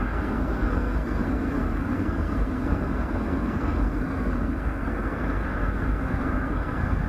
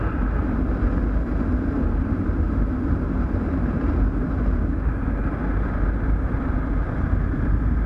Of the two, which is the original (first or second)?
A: second